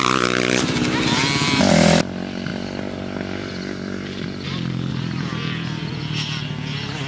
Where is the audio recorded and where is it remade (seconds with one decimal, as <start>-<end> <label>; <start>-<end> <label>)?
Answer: 0.0-7.1 remade